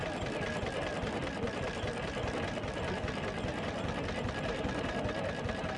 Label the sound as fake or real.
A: real